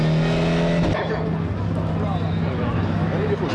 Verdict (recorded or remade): recorded